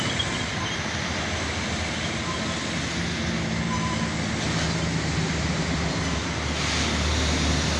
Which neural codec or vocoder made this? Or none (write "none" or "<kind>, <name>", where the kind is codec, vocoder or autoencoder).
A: none